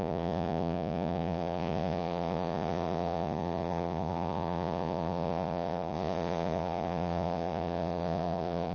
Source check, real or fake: fake